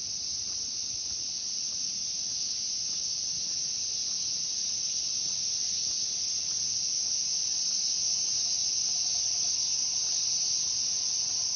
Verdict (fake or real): real